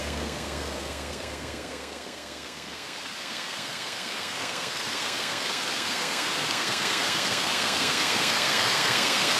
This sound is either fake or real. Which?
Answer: fake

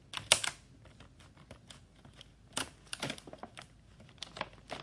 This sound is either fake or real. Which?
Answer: real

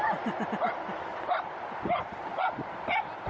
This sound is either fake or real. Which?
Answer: real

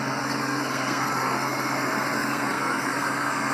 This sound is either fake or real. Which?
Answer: fake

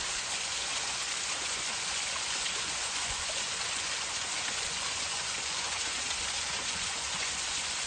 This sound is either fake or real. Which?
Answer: fake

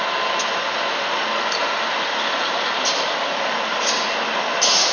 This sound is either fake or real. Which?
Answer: real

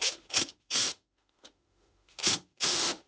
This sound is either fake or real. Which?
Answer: fake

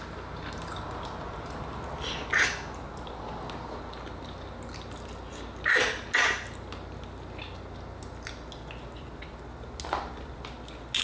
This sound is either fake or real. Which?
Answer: real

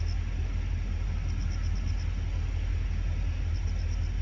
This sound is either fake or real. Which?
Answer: real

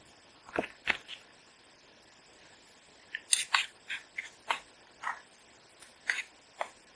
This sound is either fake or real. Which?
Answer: real